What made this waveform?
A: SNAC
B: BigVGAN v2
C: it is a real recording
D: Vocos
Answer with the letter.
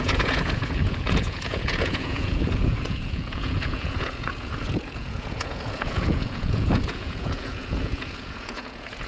D